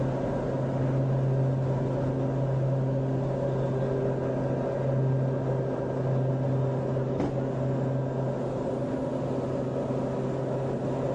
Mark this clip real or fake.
real